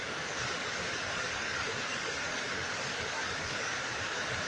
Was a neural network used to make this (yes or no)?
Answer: yes